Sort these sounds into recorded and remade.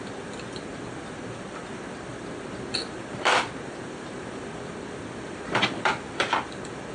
remade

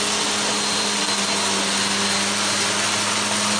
recorded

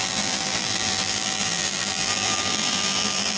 remade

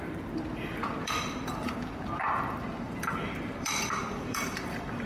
remade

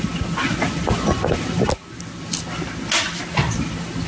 recorded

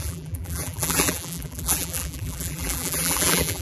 remade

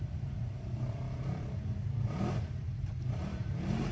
remade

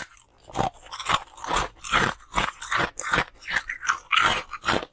recorded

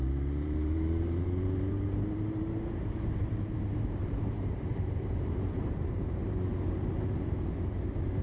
remade